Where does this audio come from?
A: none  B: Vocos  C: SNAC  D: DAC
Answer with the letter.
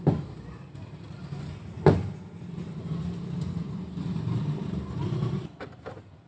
A